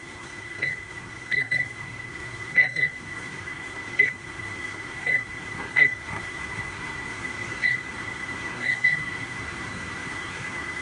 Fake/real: fake